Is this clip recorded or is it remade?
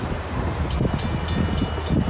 recorded